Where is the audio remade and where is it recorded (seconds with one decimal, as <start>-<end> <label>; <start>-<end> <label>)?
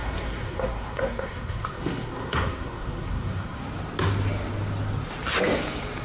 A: 0.0-3.6 remade; 3.6-6.0 recorded